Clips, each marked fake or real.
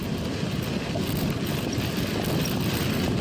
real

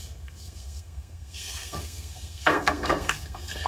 fake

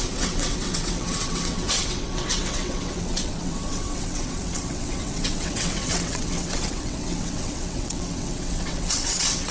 fake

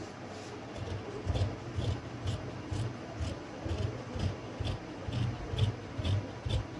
real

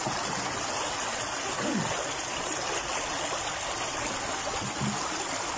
real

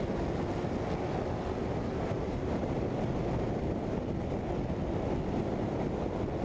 real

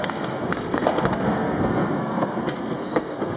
fake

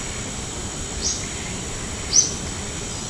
real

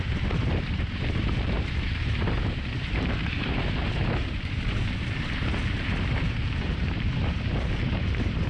fake